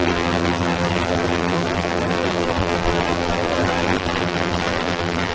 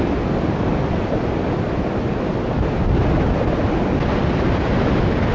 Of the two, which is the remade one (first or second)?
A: first